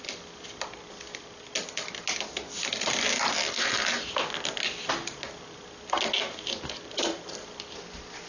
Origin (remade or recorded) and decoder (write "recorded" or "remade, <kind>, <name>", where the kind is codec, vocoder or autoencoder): recorded